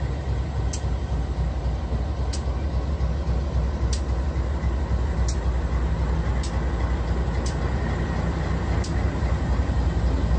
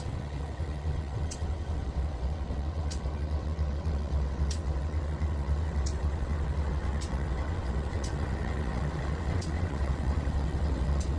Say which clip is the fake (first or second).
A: second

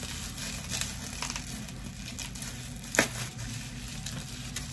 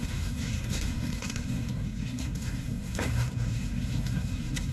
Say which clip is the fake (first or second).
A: second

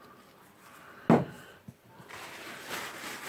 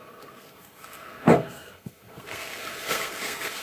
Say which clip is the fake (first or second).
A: second